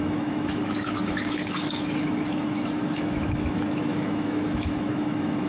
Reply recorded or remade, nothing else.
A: remade